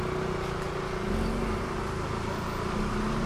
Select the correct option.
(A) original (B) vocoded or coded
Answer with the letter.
A